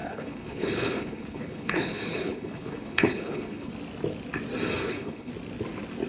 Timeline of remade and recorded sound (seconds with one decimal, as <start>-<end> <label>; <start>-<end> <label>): 0.0-3.7 remade; 3.7-4.8 recorded; 4.8-5.3 remade; 5.3-6.1 recorded